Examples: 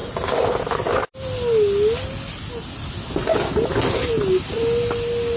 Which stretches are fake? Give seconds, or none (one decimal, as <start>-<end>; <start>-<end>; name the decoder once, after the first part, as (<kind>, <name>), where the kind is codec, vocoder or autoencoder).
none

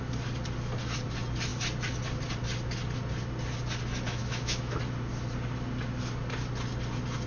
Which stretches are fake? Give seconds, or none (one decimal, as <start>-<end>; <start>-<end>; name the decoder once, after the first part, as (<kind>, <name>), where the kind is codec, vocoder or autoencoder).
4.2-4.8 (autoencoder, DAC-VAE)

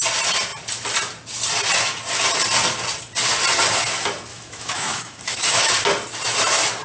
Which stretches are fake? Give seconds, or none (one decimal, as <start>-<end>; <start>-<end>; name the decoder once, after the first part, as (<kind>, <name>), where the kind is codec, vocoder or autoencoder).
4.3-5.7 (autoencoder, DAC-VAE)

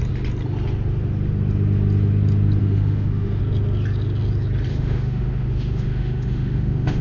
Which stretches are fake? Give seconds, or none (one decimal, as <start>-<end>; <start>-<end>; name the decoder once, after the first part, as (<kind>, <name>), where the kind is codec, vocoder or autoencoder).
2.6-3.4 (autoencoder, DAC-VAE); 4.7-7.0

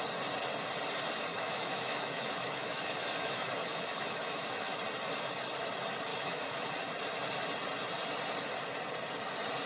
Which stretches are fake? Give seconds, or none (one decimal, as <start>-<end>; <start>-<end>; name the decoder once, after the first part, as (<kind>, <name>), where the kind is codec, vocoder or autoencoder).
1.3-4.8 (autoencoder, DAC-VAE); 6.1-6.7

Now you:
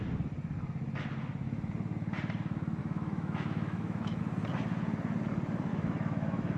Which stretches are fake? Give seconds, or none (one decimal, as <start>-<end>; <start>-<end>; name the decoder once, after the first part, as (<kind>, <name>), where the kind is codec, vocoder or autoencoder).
2.8-4.2 (autoencoder, DAC-VAE); 5.7-6.6